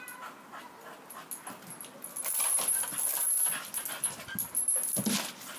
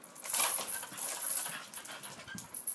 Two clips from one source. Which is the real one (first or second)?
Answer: first